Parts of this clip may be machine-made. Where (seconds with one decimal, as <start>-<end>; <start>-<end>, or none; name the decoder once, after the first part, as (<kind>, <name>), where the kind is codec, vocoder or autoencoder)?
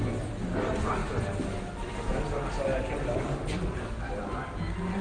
none